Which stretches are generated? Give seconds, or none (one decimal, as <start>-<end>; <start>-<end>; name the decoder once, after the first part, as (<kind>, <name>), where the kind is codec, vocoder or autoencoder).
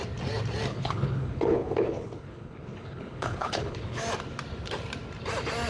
0.7-4.0 (codec, HILCodec)